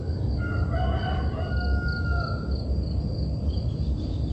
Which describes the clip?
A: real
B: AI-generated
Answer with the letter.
A